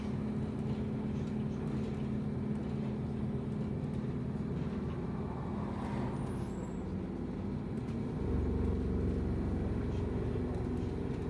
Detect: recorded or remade recorded